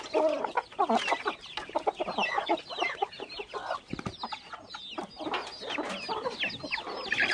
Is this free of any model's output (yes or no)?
yes